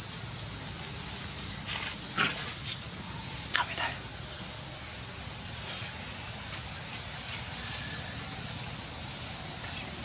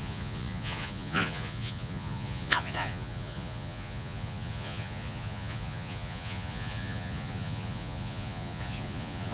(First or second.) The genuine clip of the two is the first